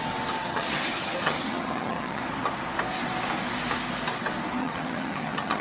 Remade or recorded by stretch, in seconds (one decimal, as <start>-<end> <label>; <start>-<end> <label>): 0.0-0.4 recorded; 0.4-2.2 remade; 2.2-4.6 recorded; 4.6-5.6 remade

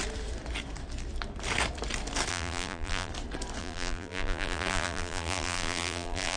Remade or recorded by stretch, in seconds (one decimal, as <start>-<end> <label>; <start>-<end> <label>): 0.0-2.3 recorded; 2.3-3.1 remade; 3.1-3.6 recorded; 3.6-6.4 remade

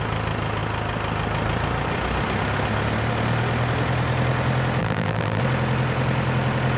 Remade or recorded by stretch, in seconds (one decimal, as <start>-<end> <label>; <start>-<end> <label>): 0.0-4.8 recorded; 4.8-5.4 remade; 5.4-6.8 recorded

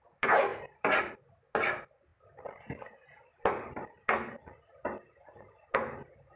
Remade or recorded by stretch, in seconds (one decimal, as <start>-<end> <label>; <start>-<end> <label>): 0.0-6.4 recorded

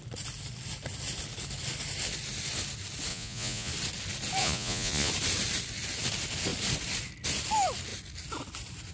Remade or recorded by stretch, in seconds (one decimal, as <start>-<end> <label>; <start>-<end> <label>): 0.0-3.1 recorded; 3.1-3.7 remade; 3.7-4.4 recorded; 4.4-5.1 remade; 5.1-8.9 recorded